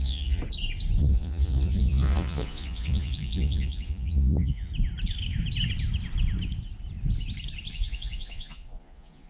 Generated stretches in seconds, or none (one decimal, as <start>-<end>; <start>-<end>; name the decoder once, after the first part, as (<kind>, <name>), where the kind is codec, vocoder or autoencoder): 0.0-0.4 (vocoder, Vocos); 1.0-4.7; 7.7-9.3

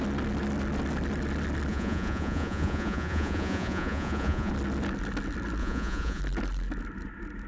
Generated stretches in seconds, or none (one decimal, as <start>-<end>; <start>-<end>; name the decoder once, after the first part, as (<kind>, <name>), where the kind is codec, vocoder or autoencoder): 1.7-4.5 (vocoder, Vocos); 5.6-6.2

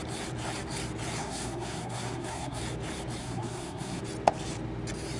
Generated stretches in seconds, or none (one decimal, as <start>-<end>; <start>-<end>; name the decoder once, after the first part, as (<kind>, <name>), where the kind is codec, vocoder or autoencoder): 1.2-2.6 (codec, SNAC); 3.2-4.0

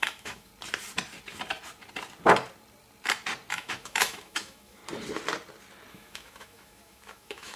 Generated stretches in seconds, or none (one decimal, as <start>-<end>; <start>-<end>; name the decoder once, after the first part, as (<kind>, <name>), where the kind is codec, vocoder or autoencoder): 0.0-0.5 (autoencoder, DAC-VAE); 3.5-4.8; 5.9-7.6

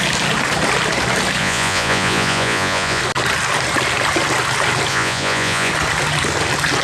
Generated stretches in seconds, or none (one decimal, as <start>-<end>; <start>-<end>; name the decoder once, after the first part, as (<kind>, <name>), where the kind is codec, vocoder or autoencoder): 1.4-3.0 (vocoder, Vocos); 4.9-5.7